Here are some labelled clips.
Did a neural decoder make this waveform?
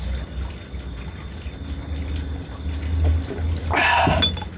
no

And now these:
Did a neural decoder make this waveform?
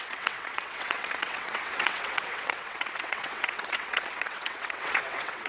yes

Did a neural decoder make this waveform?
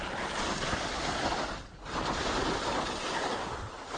no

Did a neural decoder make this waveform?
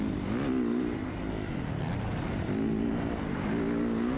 no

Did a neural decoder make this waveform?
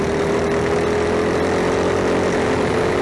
no